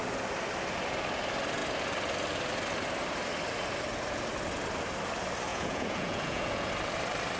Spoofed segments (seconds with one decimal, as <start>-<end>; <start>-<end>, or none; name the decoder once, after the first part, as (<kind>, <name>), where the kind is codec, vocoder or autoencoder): 5.5-6.7 (vocoder, Vocos)